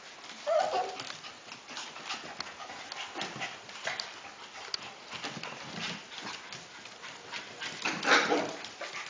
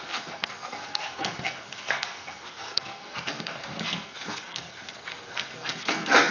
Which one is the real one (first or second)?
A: first